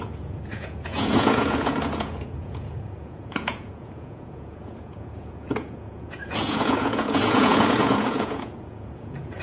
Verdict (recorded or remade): remade